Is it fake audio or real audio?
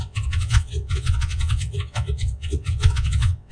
fake